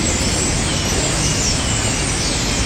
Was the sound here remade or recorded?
recorded